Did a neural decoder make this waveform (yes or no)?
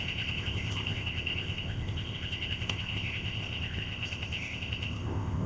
yes